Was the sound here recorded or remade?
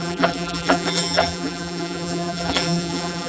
remade